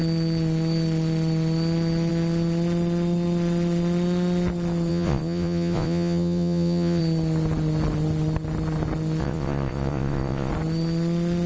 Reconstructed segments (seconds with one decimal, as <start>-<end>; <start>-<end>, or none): 4.9-7.0; 9.2-10.5